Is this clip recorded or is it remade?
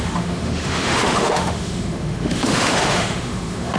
remade